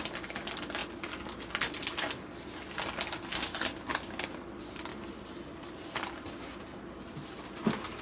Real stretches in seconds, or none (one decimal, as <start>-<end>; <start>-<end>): 0.0-8.0